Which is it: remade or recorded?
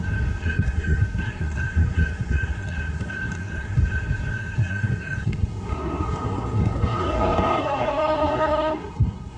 remade